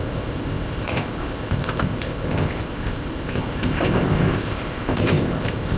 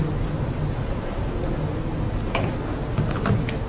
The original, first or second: second